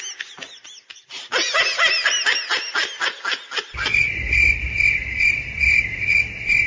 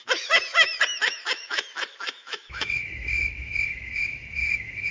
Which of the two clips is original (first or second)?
first